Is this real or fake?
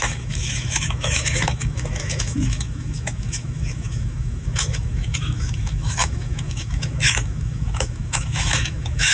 fake